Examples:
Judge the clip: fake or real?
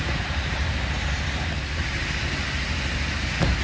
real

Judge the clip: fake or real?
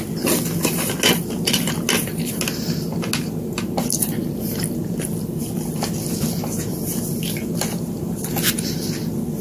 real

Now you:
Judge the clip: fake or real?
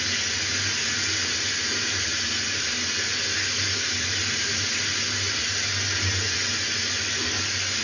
real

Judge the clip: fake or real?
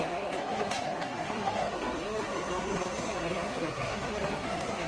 fake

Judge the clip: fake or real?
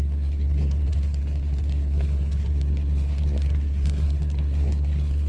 fake